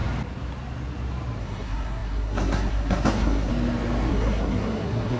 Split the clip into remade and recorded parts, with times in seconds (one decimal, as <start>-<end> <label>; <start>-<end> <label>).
0.0-1.4 recorded; 1.4-3.5 remade; 3.5-4.1 recorded; 4.1-5.2 remade